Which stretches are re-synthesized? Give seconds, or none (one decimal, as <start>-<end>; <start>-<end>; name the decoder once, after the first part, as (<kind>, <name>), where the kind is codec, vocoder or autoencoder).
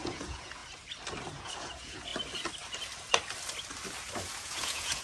0.0-0.6 (vocoder, Vocos); 1.3-2.1; 4.4-5.0